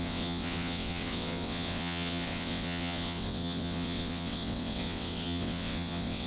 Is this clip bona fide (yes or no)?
no